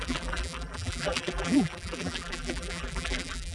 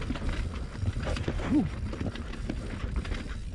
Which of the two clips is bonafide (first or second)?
second